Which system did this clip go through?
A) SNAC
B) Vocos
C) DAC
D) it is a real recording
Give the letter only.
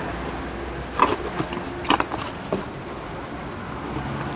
D